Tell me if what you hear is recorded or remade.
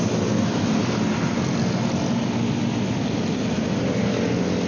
recorded